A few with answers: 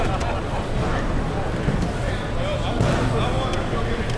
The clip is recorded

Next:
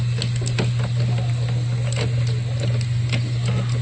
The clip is recorded